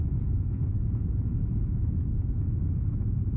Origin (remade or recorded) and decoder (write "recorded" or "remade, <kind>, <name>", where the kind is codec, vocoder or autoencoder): remade, vocoder, Vocos